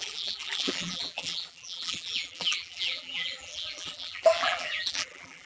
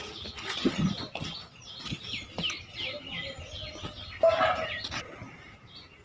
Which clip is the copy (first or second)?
first